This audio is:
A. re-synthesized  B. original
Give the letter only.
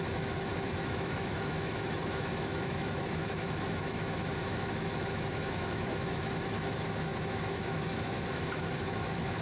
A